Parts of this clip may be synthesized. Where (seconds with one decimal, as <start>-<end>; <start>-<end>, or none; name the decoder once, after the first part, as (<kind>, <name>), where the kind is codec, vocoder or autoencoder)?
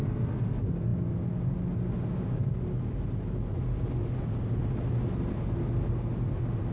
none